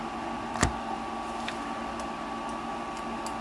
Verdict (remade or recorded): recorded